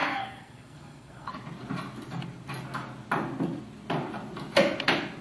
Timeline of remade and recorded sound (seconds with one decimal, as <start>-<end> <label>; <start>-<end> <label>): 0.0-1.3 remade; 1.3-5.2 recorded